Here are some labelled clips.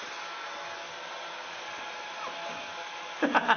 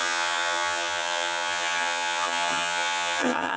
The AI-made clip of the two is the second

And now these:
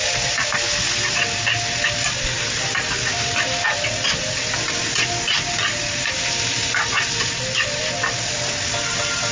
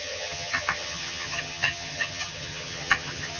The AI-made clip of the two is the second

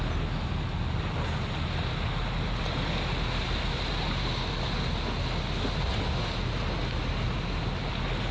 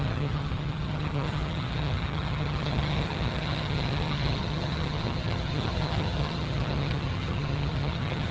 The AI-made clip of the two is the second